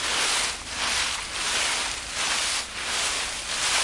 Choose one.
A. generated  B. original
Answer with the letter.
B